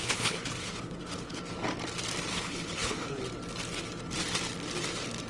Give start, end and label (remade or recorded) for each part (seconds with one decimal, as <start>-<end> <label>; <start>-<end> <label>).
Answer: 0.0-1.4 remade; 1.4-2.3 recorded; 2.3-3.2 remade; 3.2-5.3 recorded